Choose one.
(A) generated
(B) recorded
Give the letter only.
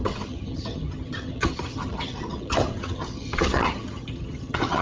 A